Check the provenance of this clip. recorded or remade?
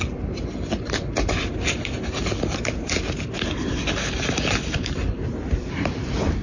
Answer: remade